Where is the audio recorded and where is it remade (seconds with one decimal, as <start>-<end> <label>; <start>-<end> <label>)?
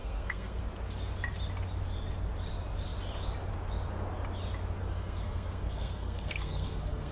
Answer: 0.0-0.6 remade; 0.6-4.8 recorded; 4.8-7.1 remade